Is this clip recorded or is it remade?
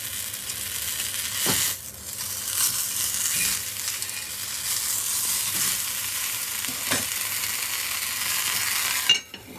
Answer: recorded